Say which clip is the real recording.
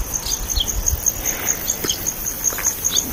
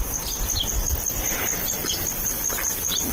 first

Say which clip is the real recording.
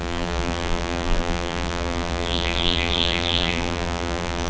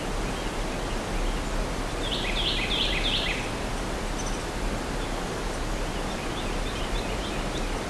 second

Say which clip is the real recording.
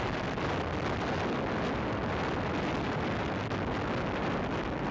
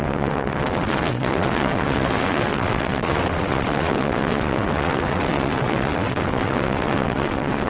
first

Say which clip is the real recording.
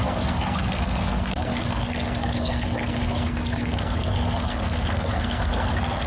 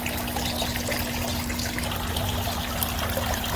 second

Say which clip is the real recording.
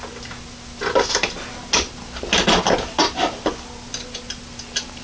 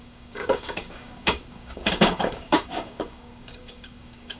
first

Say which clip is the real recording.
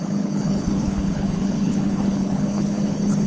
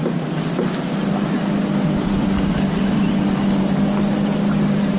second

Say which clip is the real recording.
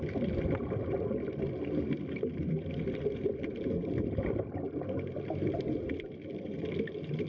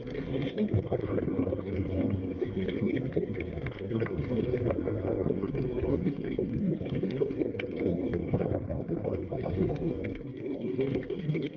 first